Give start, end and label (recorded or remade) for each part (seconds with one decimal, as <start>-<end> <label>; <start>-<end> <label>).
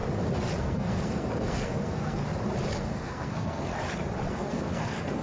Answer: 0.0-0.6 recorded; 0.6-2.2 remade; 2.2-2.8 recorded; 2.8-3.7 remade; 3.7-4.3 recorded; 4.3-5.2 remade